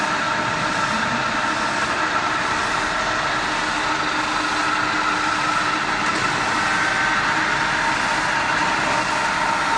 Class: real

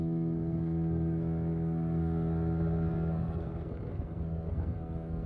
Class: fake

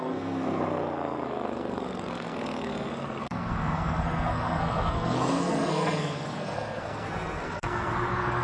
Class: fake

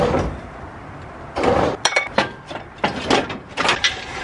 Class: real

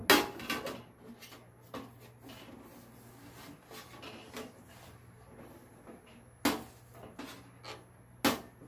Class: real